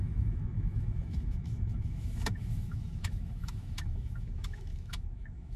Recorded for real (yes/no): no